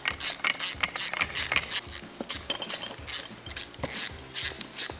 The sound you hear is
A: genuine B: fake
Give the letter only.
A